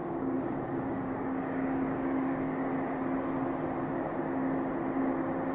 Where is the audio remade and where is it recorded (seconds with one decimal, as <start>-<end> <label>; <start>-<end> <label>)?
0.0-2.8 remade; 2.8-5.5 recorded

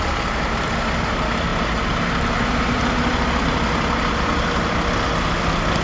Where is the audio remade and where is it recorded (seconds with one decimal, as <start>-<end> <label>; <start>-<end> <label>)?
0.0-5.8 recorded

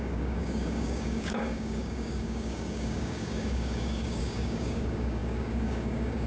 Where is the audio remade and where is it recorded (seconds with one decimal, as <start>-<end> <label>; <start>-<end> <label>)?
0.0-6.3 remade

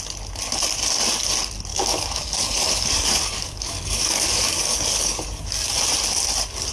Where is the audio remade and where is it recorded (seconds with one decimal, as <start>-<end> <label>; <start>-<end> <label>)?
0.0-1.7 recorded; 1.7-5.7 remade; 5.7-6.7 recorded

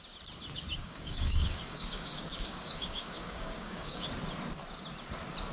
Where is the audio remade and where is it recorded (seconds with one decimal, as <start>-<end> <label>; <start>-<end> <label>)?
0.0-0.8 recorded; 0.8-4.1 remade; 4.1-5.5 recorded

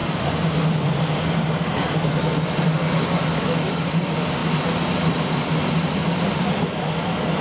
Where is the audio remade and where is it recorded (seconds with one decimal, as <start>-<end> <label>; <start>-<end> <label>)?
0.0-3.3 recorded; 3.3-3.8 remade; 3.8-7.4 recorded

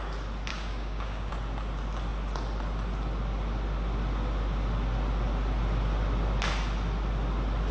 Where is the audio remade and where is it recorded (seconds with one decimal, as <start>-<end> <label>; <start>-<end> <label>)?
0.0-0.5 recorded; 0.5-1.3 remade; 1.3-7.7 recorded